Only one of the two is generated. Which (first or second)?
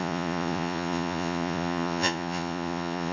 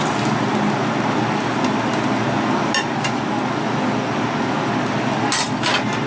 first